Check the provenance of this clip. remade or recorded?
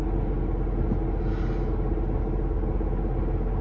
recorded